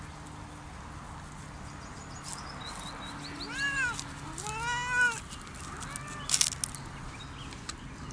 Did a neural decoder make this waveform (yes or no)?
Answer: no